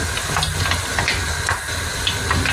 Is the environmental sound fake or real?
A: real